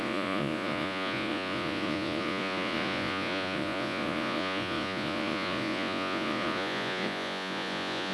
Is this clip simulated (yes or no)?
yes